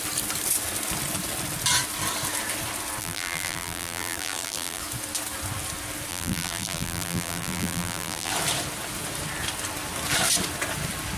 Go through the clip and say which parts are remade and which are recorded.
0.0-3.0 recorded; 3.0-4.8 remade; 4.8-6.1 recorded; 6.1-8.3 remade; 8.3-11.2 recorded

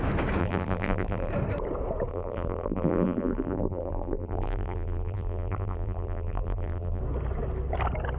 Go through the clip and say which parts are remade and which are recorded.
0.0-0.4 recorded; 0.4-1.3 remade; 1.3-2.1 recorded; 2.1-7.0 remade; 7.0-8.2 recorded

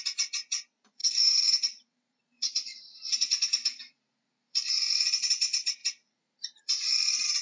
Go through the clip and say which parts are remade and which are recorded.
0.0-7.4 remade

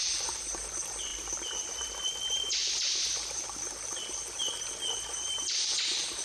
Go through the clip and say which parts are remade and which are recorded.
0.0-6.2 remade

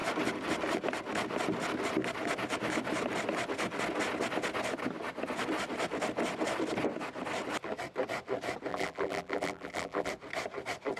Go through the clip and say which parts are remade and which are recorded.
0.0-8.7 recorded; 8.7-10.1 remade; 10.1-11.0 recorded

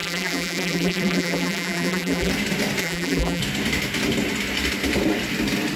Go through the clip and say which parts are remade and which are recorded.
0.0-2.3 remade; 2.3-2.8 recorded; 2.8-3.4 remade; 3.4-5.8 recorded

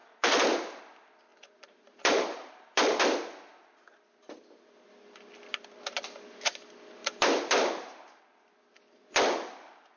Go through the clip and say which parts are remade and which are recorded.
0.0-0.8 remade; 0.8-1.3 recorded; 1.3-2.5 remade; 2.5-7.0 recorded; 7.0-8.2 remade; 8.2-10.0 recorded